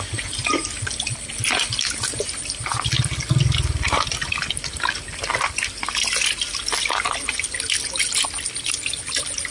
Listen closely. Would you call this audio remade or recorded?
recorded